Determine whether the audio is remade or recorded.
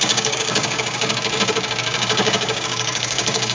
remade